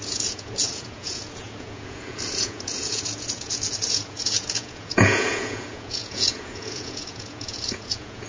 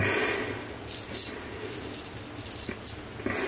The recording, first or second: second